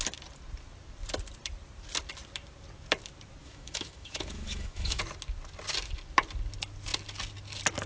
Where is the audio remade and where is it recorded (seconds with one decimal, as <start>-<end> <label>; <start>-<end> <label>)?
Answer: 0.0-3.4 recorded; 3.4-5.0 remade; 5.0-7.9 recorded